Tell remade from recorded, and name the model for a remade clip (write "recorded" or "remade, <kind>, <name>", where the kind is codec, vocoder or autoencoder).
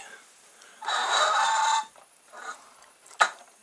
remade, vocoder, BigVGAN v2